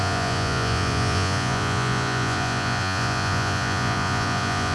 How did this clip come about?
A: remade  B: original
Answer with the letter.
A